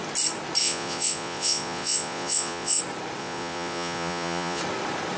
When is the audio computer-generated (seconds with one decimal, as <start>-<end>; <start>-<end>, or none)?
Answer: 0.6-2.8; 3.2-4.6